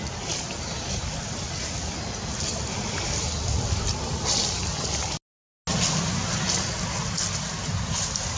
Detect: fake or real real